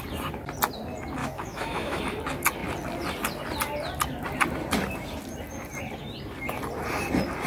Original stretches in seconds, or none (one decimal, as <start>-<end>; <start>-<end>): 0.0-1.2; 2.0-7.5